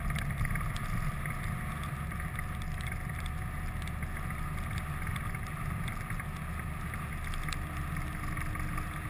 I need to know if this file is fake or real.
real